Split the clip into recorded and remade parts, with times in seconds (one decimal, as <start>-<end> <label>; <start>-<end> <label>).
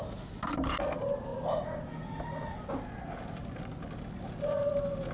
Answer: 0.0-5.1 recorded